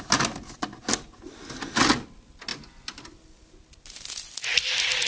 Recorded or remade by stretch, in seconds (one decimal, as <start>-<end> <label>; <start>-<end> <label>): 0.0-5.1 recorded